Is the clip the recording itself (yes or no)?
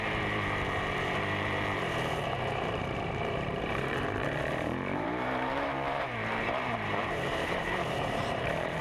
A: no